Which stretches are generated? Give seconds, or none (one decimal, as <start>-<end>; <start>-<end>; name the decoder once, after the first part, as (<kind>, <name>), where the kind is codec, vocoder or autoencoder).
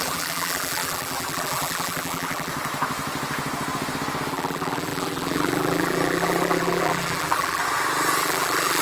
0.0-2.5 (vocoder, BigVGAN v2); 4.3-7.6; 8.2-8.8